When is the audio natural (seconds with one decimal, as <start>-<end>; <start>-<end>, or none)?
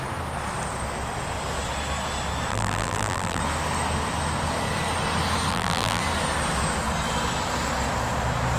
0.0-2.5; 3.4-5.5; 6.0-8.6